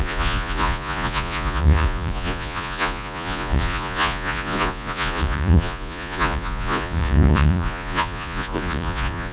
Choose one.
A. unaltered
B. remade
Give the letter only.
B